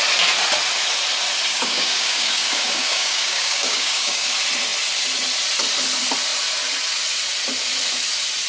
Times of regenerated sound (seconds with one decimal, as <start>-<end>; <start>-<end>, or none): 1.5-4.3